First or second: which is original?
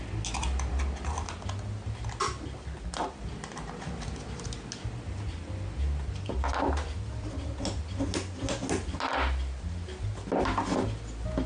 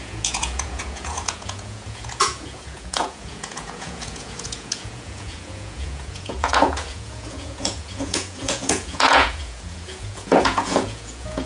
first